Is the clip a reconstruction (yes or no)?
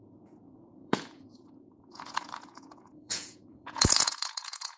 yes